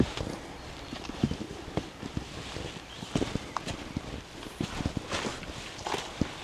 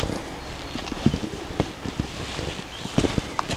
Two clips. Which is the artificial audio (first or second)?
first